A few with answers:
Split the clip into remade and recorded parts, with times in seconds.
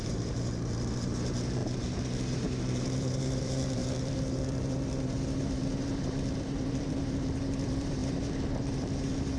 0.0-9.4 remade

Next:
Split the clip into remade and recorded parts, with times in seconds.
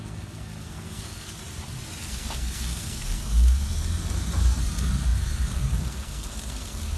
0.0-1.4 remade; 1.4-2.0 recorded; 2.0-7.0 remade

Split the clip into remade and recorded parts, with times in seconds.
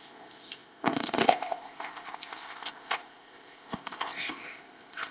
0.0-5.1 remade